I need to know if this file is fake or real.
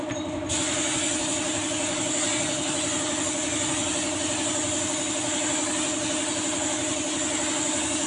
real